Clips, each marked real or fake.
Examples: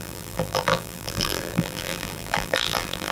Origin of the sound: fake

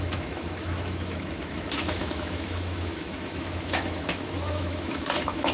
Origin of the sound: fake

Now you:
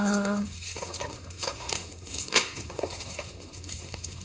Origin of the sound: fake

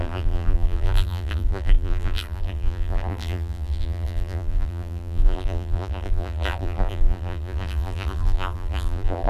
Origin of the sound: fake